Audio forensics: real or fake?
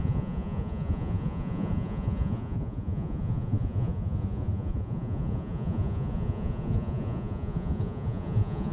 fake